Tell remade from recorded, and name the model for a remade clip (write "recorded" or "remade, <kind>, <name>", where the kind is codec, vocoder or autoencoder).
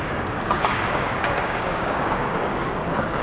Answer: remade, codec, DAC